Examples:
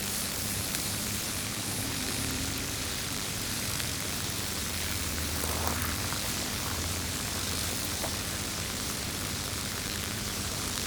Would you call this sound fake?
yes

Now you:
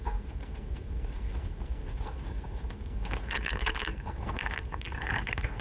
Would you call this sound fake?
yes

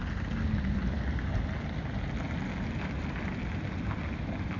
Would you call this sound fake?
no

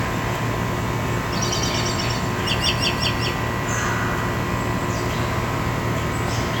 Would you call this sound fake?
no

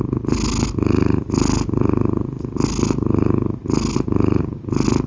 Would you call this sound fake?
no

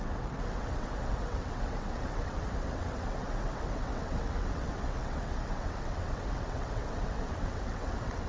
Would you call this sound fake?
yes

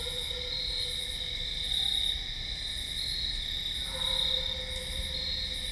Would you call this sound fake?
no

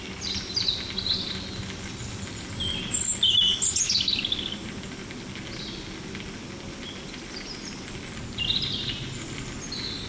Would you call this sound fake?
no